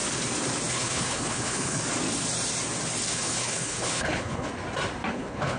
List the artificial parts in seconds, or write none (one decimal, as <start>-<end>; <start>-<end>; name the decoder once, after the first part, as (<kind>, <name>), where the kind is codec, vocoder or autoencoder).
0.7-1.8 (codec, HILCodec); 3.1-4.5; 5.1-5.6